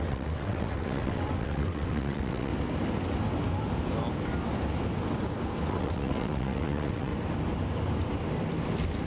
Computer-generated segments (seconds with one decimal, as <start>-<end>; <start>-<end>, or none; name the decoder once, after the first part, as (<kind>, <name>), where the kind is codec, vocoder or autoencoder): 0.0-2.5 (vocoder, WaveNeXt); 5.7-7.1